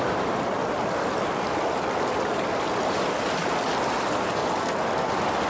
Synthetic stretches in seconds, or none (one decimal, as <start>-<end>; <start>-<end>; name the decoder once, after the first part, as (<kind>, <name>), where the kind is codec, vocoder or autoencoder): 0.0-0.6 (vocoder, BigVGAN v2); 3.9-4.4